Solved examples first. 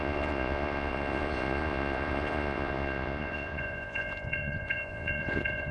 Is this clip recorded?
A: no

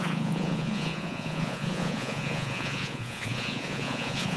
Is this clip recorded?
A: no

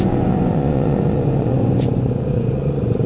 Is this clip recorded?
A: no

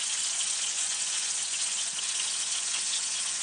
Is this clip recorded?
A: no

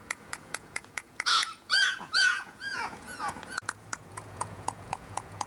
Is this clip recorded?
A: no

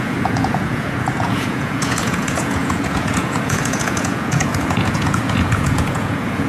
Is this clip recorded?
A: no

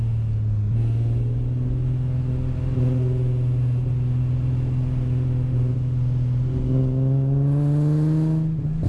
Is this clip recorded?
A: yes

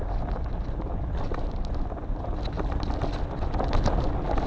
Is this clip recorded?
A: yes